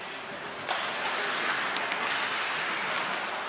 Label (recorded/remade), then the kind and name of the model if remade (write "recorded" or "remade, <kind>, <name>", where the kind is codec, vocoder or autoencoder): recorded